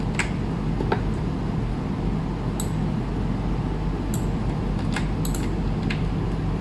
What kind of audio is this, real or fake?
real